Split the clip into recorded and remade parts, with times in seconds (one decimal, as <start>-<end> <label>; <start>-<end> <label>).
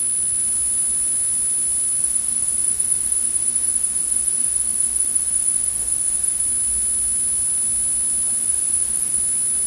0.0-2.0 recorded; 2.0-6.4 remade; 6.4-8.4 recorded; 8.4-9.2 remade; 9.2-9.7 recorded